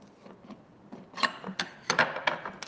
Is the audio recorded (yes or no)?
yes